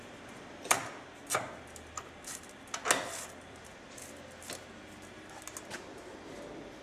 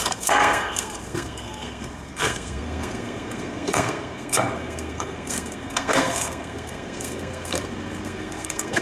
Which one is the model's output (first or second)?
second